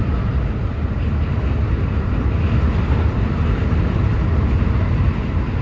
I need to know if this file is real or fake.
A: real